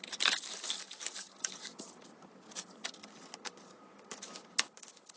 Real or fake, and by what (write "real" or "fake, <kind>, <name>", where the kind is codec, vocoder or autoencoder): real